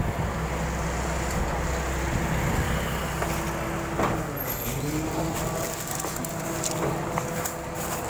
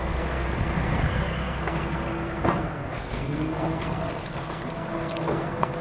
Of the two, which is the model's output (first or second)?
second